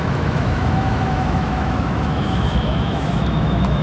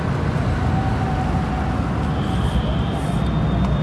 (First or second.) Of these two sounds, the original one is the second